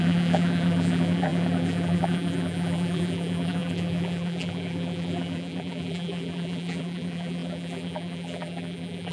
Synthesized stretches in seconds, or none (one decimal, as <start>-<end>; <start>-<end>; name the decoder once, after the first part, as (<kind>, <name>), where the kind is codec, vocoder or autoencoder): 0.0-9.1 (vocoder, BigVGAN v2)